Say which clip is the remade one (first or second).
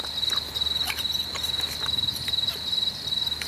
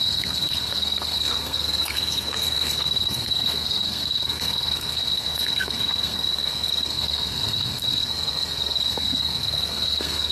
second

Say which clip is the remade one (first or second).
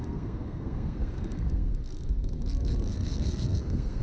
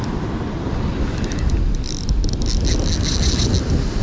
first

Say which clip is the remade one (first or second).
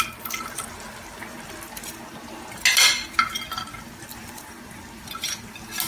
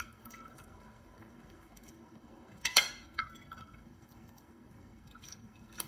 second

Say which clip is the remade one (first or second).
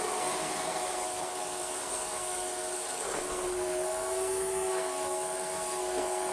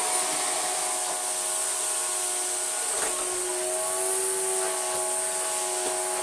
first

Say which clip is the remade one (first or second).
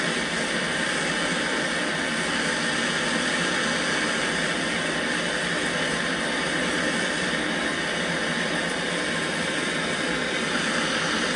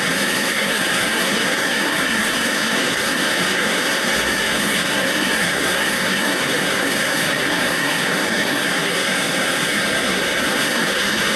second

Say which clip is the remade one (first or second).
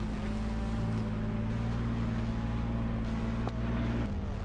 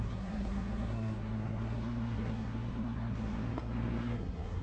second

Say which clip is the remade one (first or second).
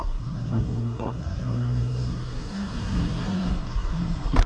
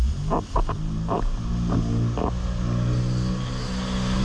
first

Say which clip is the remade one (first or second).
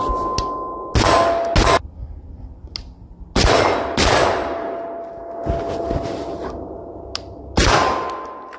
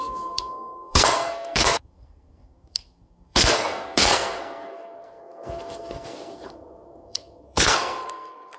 second